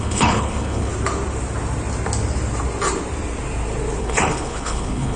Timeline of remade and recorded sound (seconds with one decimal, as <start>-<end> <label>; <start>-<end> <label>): 0.0-0.9 remade; 0.9-4.0 recorded; 4.0-5.2 remade